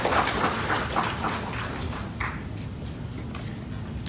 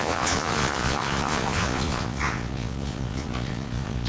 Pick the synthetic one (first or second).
second